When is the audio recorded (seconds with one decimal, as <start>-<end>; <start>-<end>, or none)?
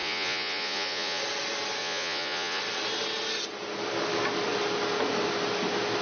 1.2-1.8; 2.6-6.0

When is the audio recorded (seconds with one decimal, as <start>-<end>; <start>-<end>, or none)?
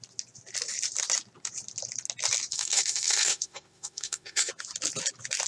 0.0-2.5; 4.5-5.5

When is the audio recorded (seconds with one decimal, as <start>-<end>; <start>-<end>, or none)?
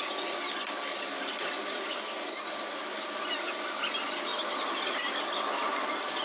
0.0-6.2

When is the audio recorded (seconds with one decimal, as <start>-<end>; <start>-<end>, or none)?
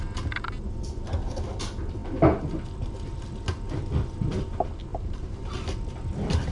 0.0-4.9; 5.5-6.5